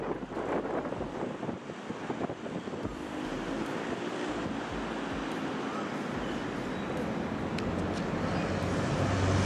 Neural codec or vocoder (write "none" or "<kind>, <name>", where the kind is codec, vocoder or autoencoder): none